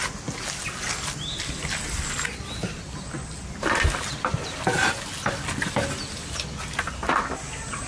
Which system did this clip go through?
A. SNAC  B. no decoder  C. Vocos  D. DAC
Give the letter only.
B